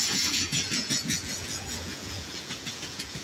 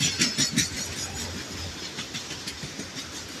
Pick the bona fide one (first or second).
second